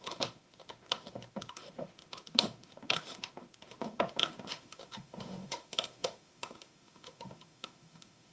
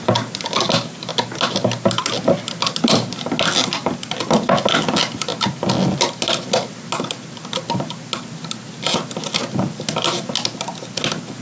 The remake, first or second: first